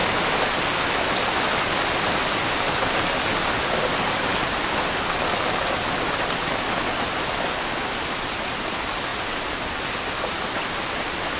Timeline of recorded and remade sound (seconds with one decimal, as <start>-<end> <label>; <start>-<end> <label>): 0.0-11.4 recorded